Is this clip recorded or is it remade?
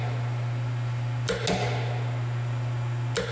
recorded